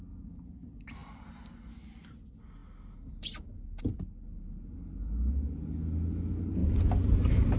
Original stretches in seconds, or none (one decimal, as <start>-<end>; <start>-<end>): 0.0-7.6